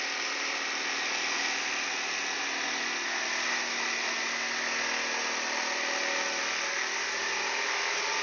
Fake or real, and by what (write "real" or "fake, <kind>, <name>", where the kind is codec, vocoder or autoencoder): real